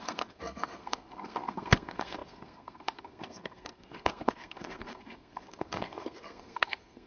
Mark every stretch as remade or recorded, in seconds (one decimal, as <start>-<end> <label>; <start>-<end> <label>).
0.0-7.1 remade